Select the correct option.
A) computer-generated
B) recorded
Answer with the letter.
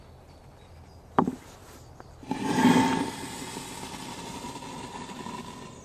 B